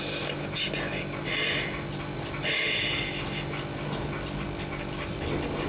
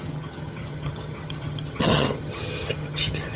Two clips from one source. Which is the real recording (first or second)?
first